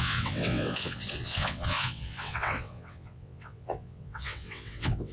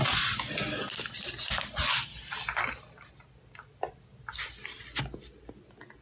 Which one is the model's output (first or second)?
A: first